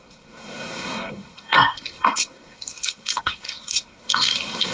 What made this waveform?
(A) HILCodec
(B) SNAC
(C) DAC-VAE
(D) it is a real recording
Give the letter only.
B